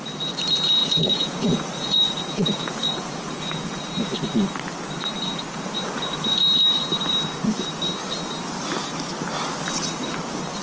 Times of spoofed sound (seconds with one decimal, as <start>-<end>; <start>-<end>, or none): 0.8-3.8